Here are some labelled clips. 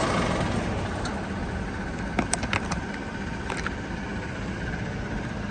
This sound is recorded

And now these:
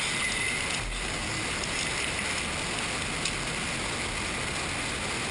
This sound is recorded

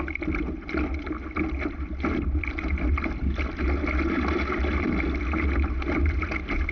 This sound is recorded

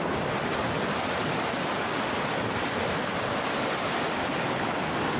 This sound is recorded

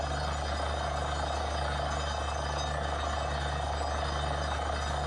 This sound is recorded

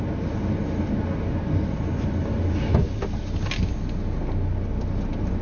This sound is recorded